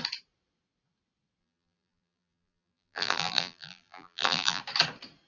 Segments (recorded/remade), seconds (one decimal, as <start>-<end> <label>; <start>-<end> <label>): 0.0-1.4 recorded; 1.4-4.6 remade; 4.6-5.3 recorded

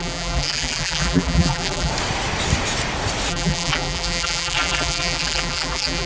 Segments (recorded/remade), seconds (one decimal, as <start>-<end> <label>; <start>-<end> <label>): 0.0-1.9 remade; 1.9-3.3 recorded; 3.3-6.1 remade

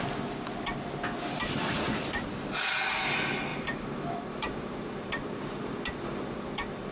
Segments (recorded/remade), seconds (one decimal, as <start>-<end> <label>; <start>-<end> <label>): 0.0-3.5 recorded; 3.5-5.1 remade; 5.1-6.9 recorded

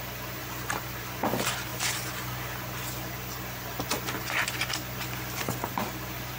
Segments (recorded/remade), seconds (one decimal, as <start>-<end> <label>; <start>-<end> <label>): 0.0-0.4 recorded; 0.4-1.0 remade; 1.0-6.4 recorded

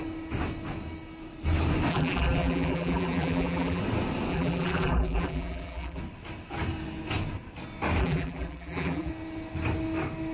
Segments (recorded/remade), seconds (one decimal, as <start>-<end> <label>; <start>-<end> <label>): 0.0-1.9 recorded; 1.9-3.8 remade; 3.8-4.3 recorded; 4.3-6.0 remade; 6.0-8.0 recorded; 8.0-9.1 remade; 9.1-10.3 recorded

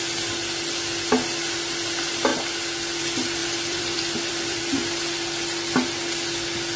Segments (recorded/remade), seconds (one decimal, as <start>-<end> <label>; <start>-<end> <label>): 0.0-3.4 recorded; 3.4-4.6 remade; 4.6-6.8 recorded

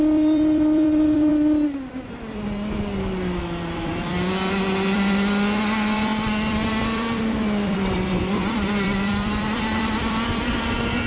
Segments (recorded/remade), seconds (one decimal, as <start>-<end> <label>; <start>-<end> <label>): 0.0-1.3 remade; 1.3-3.8 recorded; 3.8-11.1 remade